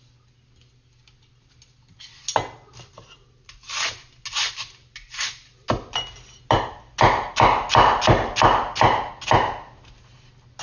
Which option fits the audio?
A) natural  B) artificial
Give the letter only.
A